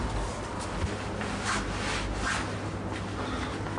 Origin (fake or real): real